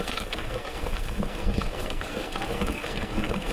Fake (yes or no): yes